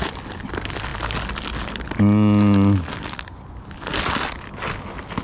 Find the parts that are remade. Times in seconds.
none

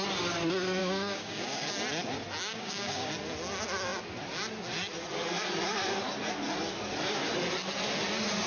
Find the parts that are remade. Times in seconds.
0.8-1.7 (codec, DAC); 2.5-3.1

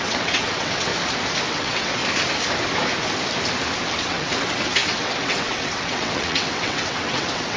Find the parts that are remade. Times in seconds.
0.0-0.9 (vocoder, WaveNeXt); 1.5-2.0; 4.0-7.6

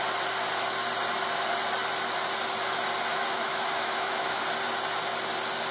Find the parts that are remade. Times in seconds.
3.1-4.4 (autoencoder, DAC-VAE)